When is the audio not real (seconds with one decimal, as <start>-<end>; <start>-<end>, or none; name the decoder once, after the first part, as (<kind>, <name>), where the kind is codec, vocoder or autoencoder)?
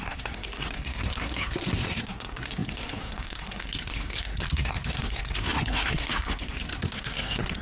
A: 0.0-7.6 (codec, SNAC)